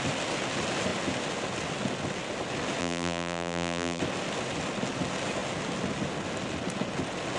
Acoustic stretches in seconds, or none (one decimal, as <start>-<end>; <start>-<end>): 0.0-2.8; 4.0-7.4